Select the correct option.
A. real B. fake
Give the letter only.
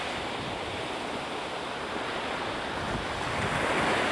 A